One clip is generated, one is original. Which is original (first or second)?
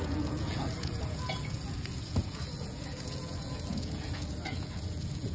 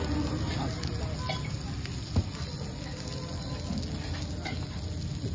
second